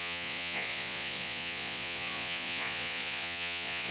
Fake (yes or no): yes